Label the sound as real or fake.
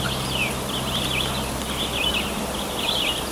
real